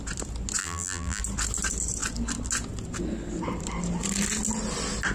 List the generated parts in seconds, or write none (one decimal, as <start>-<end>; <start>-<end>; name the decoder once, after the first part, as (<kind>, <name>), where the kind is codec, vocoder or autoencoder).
0.6-1.2 (vocoder, BigVGAN v2)